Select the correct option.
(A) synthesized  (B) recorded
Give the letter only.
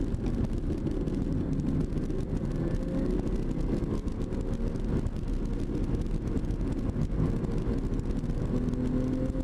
B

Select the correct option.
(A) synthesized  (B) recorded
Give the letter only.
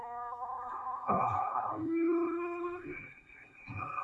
A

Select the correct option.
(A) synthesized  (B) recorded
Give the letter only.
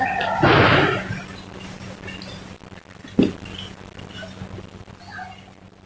B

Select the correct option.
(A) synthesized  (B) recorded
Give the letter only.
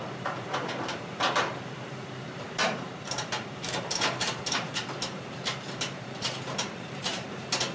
A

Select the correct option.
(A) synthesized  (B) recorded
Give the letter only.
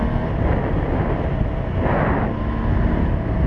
B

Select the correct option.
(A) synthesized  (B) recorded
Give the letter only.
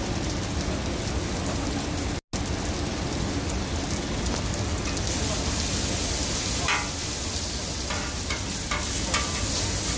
B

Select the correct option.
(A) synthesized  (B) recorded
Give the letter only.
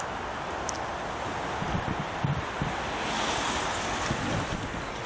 B